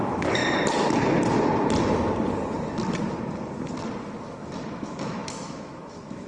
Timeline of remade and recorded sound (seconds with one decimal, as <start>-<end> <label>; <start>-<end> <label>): 0.0-0.4 remade; 0.4-4.2 recorded; 4.2-6.3 remade